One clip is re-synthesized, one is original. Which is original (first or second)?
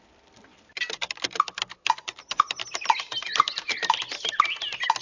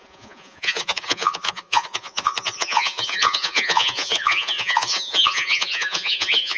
first